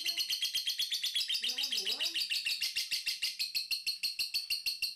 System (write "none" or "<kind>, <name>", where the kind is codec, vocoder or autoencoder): none